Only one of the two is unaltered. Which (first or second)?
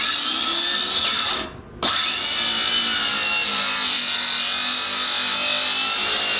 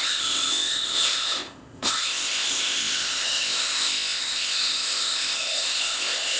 first